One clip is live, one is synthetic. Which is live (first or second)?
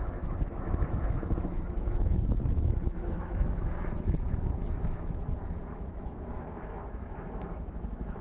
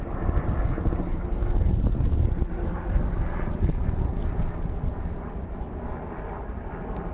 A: second